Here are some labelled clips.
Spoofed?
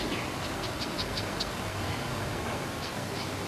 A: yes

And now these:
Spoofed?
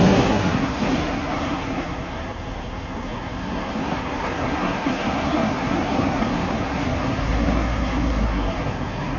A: yes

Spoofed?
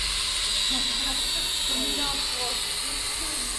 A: no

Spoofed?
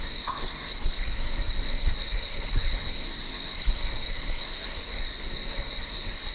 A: yes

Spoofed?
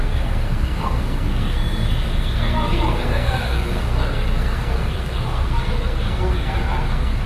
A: yes